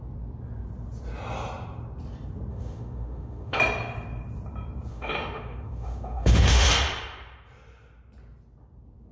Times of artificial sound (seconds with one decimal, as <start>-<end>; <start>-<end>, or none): 2.5-3.6; 4.9-6.7